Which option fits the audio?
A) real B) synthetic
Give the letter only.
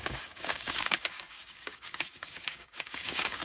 B